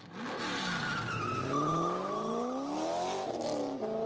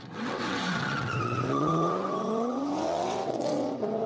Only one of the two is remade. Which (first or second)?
second